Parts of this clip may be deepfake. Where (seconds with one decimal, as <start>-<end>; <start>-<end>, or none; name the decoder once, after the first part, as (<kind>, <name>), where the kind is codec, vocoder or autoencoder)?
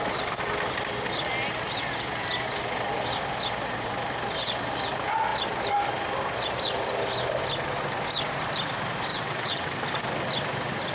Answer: 9.1-9.7 (vocoder, WaveNeXt)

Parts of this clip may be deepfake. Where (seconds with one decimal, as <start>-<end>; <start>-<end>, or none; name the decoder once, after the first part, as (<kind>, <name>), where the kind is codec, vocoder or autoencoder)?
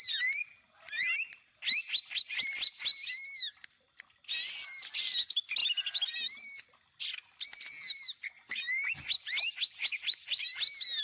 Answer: none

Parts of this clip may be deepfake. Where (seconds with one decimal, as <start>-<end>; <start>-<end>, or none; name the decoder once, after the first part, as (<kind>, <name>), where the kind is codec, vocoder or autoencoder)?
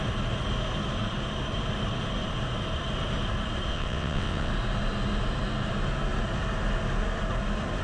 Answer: 3.7-4.5 (vocoder, WaveNeXt)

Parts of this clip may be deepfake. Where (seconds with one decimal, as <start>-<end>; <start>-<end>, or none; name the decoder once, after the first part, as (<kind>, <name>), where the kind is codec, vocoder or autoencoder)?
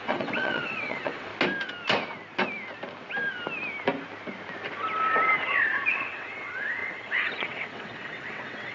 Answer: 0.0-1.3 (vocoder, WaveNeXt); 5.9-8.7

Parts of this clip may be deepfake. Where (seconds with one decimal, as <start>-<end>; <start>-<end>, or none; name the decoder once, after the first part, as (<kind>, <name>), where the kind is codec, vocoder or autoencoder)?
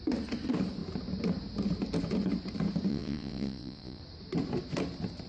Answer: 2.9-4.0 (vocoder, WaveNeXt)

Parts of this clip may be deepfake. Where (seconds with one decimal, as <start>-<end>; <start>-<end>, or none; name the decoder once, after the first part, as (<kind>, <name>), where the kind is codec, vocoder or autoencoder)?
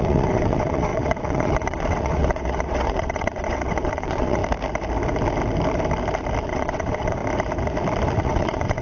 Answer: 0.0-4.4 (vocoder, WaveNeXt); 6.4-7.2; 8.2-8.8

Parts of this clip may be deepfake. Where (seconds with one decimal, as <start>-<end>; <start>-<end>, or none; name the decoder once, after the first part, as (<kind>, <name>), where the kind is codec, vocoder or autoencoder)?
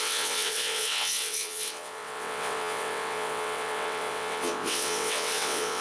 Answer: 0.0-5.8 (vocoder, WaveNeXt)